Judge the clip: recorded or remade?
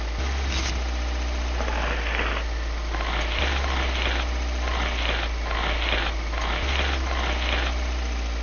recorded